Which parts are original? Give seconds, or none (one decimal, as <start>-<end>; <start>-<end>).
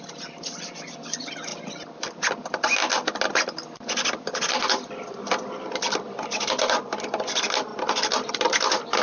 1.5-4.3; 7.7-8.3